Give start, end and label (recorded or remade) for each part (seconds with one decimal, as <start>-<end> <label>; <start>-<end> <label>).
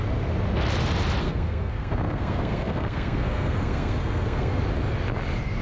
0.0-1.2 recorded; 1.2-4.6 remade; 4.6-5.6 recorded